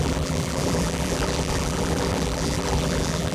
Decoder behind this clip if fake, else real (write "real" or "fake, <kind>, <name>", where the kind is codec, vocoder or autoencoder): fake, vocoder, BigVGAN v2